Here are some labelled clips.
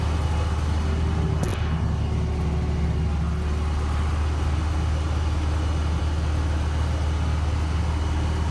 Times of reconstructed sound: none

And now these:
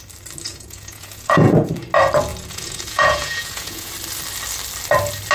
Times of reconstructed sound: 0.5-1.7 (vocoder, Vocos); 2.3-3.9

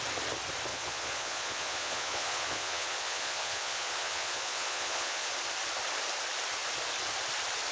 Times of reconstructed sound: 0.7-5.3 (vocoder, Vocos)

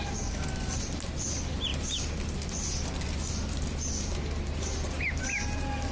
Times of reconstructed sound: none

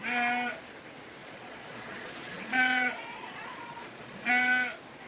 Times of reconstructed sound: 1.2-4.3 (vocoder, Vocos)

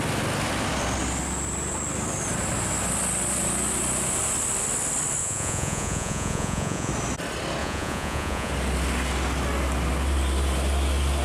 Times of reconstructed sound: 5.2-6.9 (vocoder, Vocos); 7.6-8.5